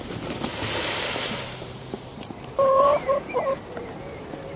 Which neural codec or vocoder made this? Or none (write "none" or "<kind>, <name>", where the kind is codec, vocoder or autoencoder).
vocoder, BigVGAN v2